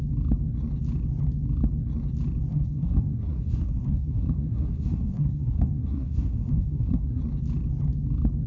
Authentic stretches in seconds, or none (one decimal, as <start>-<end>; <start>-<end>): 0.0-2.5; 7.2-8.5